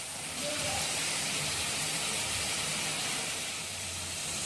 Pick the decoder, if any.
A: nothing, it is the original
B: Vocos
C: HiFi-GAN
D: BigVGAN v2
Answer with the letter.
D